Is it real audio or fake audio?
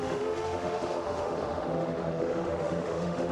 fake